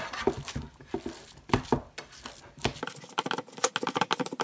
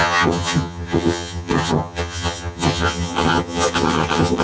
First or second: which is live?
first